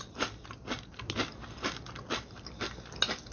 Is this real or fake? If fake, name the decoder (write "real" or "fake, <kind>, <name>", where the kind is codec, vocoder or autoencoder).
real